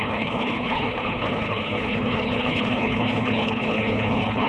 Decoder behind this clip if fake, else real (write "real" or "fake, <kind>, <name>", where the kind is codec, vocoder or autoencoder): fake, codec, HILCodec